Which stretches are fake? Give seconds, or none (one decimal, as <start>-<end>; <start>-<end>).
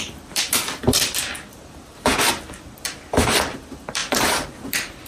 0.0-2.1; 2.8-5.1